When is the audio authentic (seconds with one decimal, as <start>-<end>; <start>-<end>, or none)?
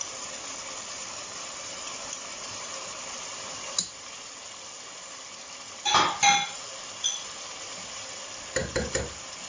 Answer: 0.0-9.5